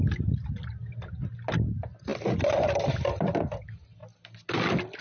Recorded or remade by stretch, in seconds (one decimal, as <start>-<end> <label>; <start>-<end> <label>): 0.0-5.0 recorded